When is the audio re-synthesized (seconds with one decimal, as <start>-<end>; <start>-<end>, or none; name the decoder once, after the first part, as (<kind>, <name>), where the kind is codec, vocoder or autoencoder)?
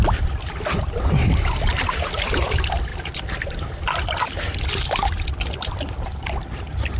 0.0-2.9 (vocoder, BigVGAN v2); 5.7-7.0